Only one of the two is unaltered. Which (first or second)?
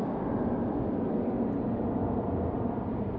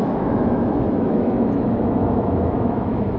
first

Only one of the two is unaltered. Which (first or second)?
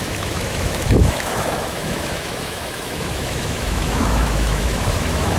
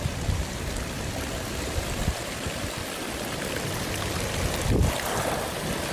second